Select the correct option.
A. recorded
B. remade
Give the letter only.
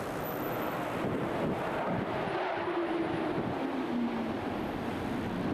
A